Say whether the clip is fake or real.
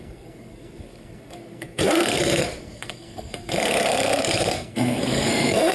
fake